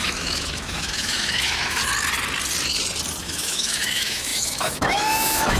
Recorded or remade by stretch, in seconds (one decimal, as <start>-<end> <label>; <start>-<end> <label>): 0.0-1.8 remade; 1.8-3.2 recorded; 3.2-5.6 remade